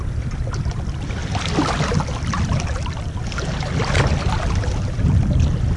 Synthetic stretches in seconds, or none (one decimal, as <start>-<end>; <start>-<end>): none